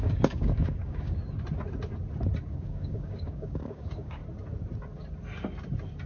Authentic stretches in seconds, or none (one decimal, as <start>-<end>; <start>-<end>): 1.2-2.5; 4.2-6.1